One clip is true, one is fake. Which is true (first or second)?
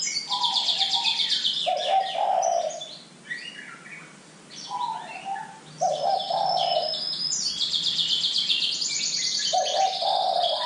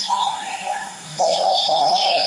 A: first